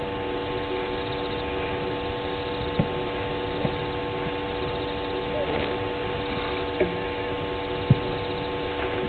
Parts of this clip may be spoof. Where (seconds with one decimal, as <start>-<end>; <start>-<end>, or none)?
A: none